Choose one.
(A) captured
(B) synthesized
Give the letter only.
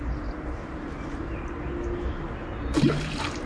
A